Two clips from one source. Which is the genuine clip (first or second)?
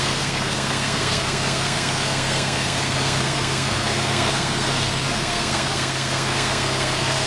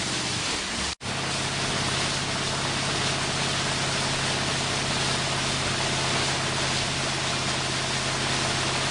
second